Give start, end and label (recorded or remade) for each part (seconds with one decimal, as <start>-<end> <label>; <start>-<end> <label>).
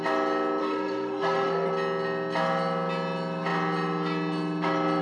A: 0.0-0.6 recorded; 0.6-1.7 remade; 1.7-5.0 recorded